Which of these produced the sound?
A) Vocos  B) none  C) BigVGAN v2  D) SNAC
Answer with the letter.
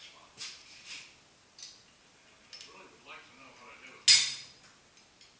B